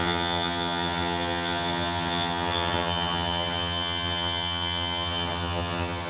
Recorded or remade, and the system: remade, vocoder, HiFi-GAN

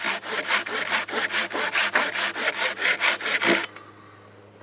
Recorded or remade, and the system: recorded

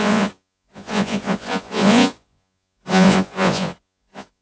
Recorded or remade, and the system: remade, vocoder, Vocos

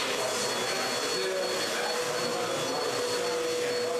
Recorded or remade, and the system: recorded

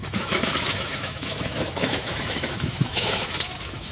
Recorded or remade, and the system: remade, autoencoder, DAC-VAE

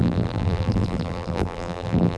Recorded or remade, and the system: remade, vocoder, BigVGAN v2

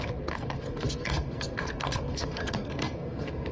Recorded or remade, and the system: remade, codec, SNAC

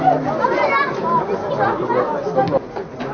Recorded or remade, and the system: recorded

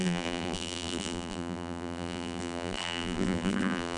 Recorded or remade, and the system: remade, vocoder, BigVGAN v2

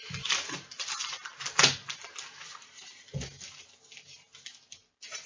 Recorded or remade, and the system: recorded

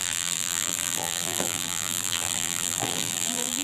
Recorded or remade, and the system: remade, vocoder, BigVGAN v2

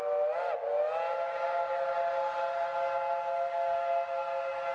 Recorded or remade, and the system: recorded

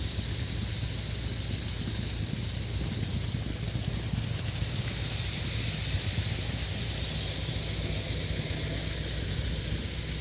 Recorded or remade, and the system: recorded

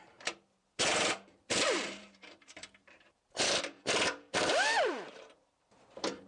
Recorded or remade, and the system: remade, vocoder, BigVGAN v2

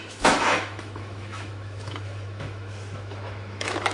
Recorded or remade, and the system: remade, autoencoder, DAC-VAE